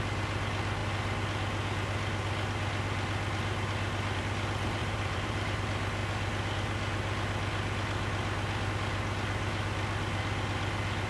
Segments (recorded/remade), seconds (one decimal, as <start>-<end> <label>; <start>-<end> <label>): 0.0-4.8 recorded; 4.8-5.6 remade; 5.6-11.1 recorded